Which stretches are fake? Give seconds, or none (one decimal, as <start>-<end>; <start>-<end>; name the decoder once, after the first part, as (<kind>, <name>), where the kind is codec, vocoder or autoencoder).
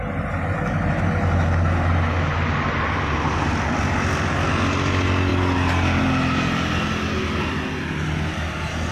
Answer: none